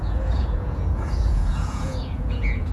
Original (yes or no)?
no